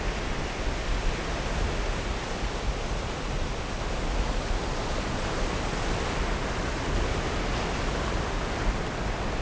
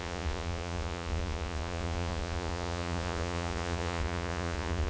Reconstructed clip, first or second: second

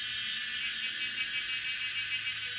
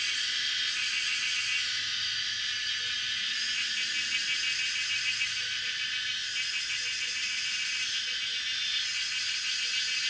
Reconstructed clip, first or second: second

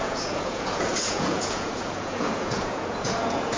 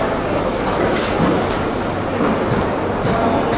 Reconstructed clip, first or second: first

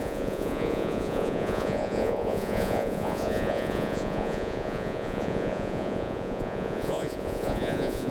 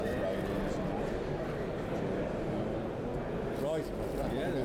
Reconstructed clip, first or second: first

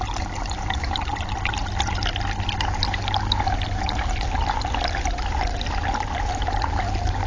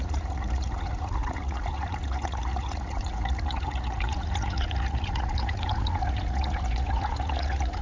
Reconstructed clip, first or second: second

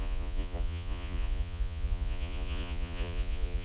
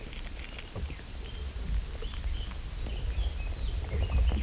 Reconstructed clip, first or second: first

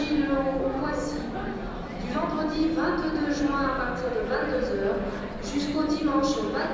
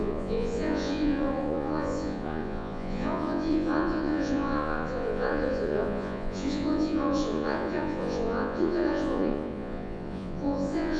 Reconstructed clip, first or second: second